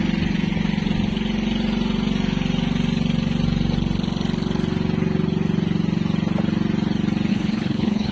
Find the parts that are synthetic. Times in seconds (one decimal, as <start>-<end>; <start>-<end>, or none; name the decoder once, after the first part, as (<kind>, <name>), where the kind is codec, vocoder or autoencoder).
7.3-8.1 (codec, HILCodec)